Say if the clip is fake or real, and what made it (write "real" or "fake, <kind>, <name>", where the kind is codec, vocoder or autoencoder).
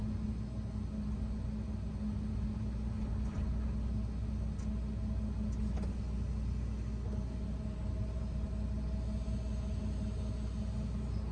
real